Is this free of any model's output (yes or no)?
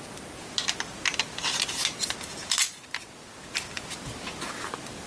yes